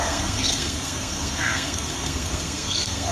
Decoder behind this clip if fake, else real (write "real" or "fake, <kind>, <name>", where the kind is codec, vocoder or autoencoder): fake, codec, SNAC